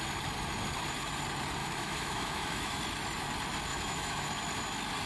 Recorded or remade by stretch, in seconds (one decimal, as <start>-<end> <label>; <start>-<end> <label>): 0.0-1.6 recorded; 1.6-2.8 remade; 2.8-3.7 recorded; 3.7-4.3 remade; 4.3-5.1 recorded